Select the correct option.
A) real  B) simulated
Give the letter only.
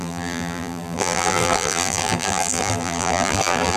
B